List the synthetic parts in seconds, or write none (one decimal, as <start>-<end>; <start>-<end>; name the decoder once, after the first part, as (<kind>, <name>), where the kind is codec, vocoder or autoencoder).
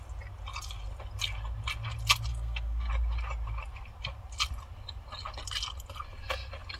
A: 2.3-2.9 (codec, SNAC)